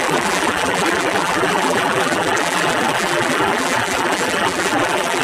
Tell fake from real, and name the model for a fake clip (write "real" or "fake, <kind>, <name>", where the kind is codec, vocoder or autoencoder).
fake, vocoder, BigVGAN v2